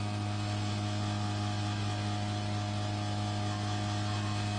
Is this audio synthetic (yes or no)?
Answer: no